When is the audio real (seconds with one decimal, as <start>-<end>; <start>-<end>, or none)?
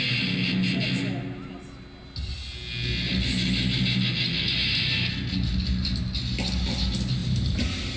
0.0-7.2